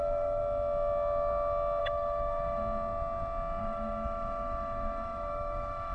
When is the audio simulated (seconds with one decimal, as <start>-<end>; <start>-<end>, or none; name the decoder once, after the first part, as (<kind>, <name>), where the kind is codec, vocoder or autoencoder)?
0.0-0.4 (autoencoder, DAC-VAE); 1.8-2.6; 3.6-5.9

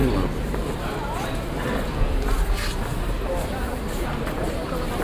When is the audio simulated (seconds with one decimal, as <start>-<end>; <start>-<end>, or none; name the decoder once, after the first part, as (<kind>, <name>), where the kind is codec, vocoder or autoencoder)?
none

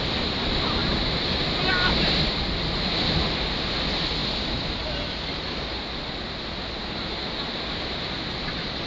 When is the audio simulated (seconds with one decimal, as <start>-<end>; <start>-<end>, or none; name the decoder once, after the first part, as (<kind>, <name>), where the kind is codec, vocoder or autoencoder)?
none